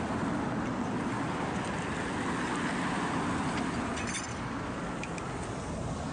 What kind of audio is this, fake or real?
real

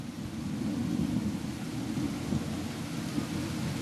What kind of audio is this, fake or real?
real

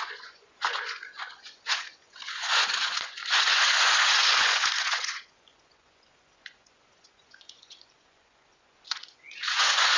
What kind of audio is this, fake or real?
fake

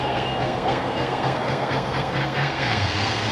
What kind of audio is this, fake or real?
fake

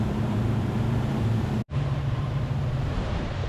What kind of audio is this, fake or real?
fake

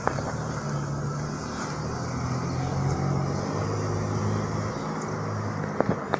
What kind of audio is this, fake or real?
real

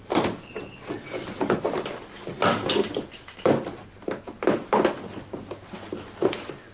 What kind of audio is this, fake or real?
real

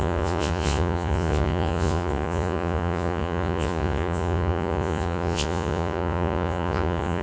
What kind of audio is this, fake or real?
fake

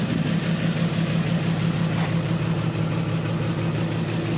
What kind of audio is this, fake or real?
real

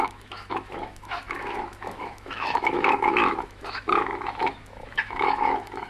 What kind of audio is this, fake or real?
fake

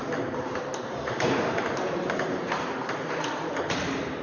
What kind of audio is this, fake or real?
fake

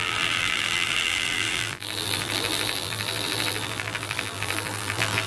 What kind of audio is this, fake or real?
fake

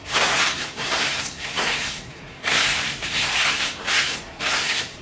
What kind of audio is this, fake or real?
fake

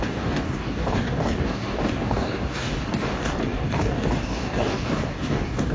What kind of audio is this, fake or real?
fake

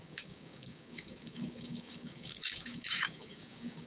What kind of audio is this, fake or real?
fake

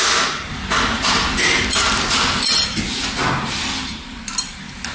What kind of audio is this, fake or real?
real